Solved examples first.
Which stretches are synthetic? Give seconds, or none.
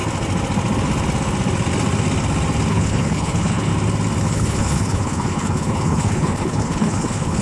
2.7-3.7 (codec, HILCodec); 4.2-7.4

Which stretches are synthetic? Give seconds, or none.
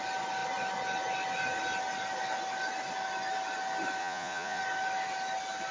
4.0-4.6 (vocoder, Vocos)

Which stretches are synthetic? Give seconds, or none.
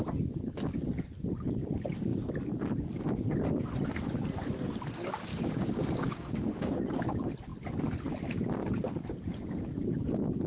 5.3-6.8 (codec, DAC)